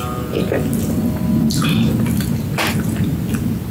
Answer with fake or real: real